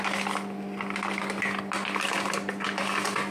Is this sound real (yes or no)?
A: yes